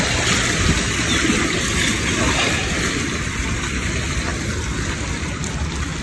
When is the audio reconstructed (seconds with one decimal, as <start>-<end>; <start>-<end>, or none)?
none